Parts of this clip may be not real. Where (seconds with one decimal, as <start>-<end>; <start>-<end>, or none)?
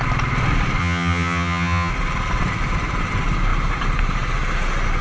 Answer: 0.8-1.9